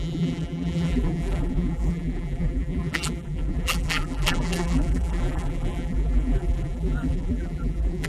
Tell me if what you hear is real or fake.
fake